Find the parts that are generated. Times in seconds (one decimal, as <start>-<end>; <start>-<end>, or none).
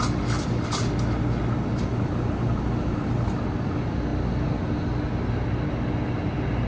none